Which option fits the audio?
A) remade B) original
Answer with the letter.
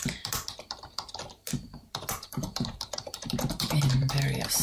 A